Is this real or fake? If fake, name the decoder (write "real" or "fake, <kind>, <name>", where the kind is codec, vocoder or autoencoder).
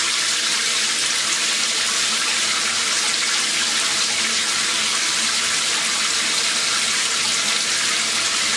fake, vocoder, BigVGAN v2